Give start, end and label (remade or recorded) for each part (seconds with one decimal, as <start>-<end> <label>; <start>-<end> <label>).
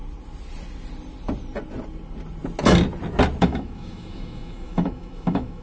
0.0-3.4 recorded; 3.4-5.6 remade